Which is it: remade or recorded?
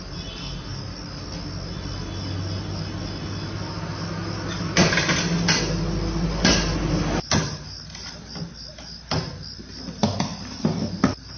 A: recorded